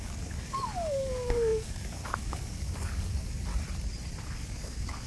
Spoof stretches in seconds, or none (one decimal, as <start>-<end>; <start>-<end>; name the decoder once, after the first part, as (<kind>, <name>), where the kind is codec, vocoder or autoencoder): 0.0-3.5 (codec, DAC); 4.3-5.1